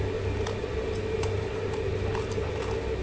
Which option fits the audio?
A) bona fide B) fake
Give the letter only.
A